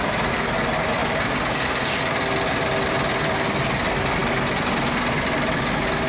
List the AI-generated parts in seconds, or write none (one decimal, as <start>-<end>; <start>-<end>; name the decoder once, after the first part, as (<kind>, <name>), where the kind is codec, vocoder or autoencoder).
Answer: none